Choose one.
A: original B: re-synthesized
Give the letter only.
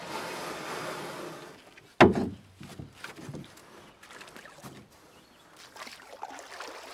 A